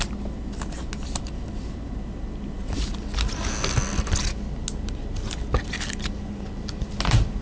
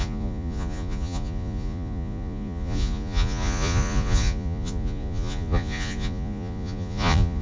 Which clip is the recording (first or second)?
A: first